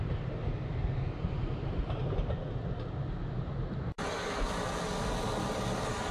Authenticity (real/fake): real